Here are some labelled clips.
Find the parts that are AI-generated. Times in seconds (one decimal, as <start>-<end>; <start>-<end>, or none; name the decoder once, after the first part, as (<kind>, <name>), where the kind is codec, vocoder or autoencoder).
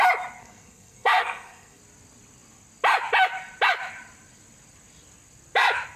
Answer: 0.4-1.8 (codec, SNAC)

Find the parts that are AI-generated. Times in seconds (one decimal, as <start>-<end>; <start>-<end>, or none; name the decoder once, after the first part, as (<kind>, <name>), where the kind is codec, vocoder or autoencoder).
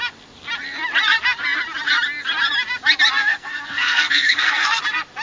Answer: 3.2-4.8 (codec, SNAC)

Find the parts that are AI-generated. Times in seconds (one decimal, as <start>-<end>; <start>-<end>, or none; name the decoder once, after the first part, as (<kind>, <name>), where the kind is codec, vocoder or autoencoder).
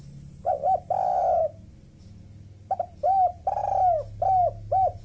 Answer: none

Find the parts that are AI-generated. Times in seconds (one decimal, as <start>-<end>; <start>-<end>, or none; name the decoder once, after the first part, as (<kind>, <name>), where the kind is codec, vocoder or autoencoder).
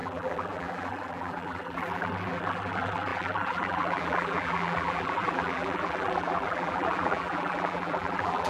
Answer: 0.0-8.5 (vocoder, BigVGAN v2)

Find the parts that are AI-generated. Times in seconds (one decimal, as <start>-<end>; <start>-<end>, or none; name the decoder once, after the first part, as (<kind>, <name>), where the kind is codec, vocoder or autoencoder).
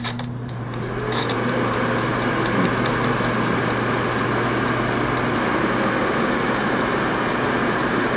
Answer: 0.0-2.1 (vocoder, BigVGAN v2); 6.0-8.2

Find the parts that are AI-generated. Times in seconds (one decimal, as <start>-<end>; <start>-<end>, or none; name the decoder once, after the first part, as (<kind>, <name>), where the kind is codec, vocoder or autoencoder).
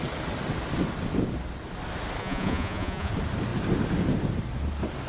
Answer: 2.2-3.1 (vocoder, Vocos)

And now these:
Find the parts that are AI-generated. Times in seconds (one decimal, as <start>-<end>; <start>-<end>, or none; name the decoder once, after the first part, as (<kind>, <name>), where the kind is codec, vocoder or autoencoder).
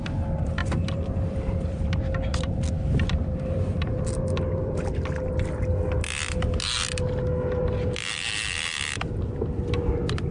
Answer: 0.6-1.8 (vocoder, BigVGAN v2); 2.3-4.9; 7.6-9.9